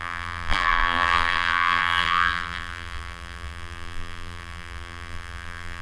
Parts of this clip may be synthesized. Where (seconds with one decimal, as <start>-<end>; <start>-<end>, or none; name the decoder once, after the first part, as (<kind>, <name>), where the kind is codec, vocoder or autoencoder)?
0.0-5.8 (vocoder, BigVGAN v2)